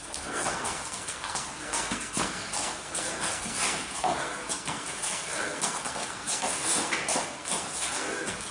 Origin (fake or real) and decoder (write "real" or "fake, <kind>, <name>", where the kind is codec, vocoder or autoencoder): fake, codec, SNAC